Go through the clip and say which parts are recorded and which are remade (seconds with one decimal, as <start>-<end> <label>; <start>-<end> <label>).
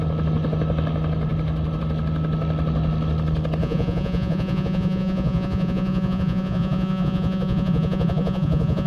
0.0-3.6 recorded; 3.6-8.9 remade